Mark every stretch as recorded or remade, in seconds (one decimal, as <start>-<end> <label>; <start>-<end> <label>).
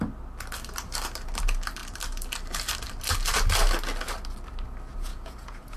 0.0-5.1 recorded; 5.1-5.8 remade